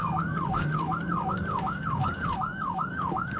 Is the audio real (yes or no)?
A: no